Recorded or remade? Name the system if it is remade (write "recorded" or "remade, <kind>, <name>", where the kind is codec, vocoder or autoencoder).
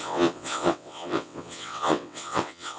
remade, vocoder, WaveNeXt